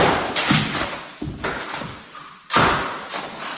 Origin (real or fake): real